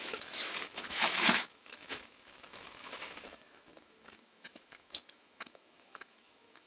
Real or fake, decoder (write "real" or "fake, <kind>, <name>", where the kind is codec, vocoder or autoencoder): fake, autoencoder, DAC-VAE